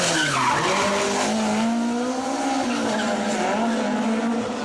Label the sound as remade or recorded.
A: recorded